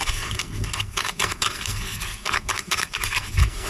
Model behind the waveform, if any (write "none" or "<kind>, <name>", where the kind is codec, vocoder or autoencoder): codec, SNAC